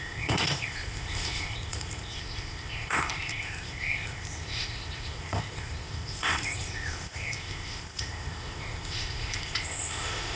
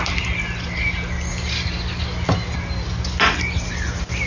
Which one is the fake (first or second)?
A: first